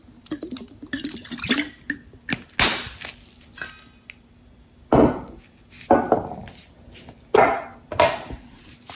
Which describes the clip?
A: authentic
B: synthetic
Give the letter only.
A